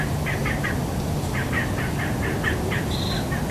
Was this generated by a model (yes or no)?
no